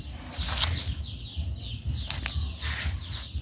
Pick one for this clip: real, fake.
real